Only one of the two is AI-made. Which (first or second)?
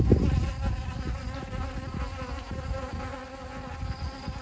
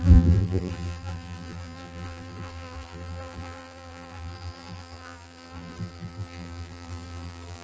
second